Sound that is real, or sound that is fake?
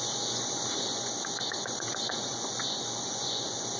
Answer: fake